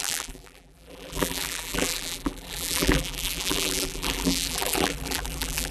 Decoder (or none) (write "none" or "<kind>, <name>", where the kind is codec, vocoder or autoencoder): vocoder, BigVGAN v2